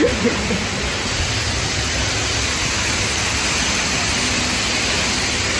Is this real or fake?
real